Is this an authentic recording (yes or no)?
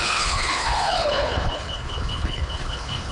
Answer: no